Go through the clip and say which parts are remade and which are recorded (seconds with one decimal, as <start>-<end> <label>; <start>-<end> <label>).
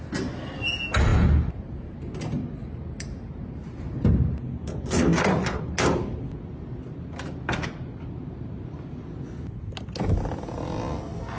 0.0-11.4 recorded